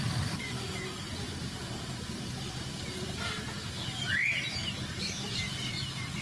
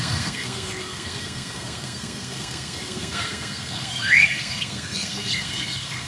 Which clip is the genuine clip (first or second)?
first